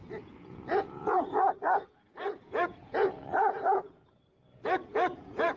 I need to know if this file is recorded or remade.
remade